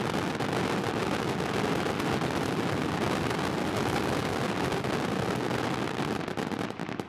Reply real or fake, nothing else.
real